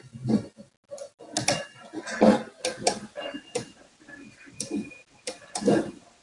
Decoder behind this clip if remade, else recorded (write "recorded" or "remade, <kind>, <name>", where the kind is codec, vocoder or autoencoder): recorded